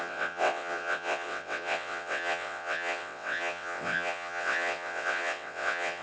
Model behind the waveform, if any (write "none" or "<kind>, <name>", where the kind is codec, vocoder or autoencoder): vocoder, WaveNeXt